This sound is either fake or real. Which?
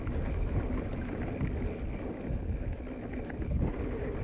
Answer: real